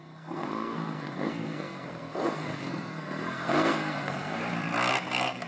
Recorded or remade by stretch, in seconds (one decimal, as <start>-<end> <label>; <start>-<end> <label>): 0.0-4.4 remade; 4.4-4.9 recorded; 4.9-5.5 remade